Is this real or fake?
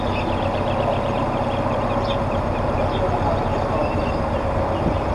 real